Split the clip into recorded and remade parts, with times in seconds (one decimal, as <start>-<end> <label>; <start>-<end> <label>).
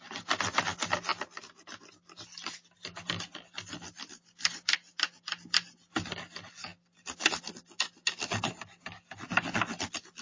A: 0.0-10.2 recorded